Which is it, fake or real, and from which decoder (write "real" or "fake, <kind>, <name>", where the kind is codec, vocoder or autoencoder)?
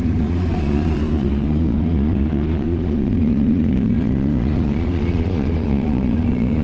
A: fake, vocoder, Vocos